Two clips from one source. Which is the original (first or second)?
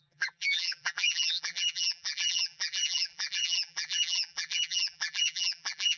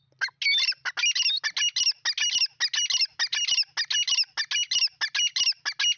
second